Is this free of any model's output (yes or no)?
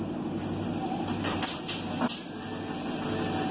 yes